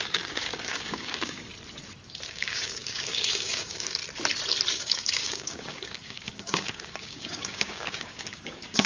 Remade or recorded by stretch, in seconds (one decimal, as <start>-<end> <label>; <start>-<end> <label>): 0.0-1.5 remade; 1.5-2.3 recorded; 2.3-4.0 remade; 4.0-4.7 recorded; 4.7-8.9 remade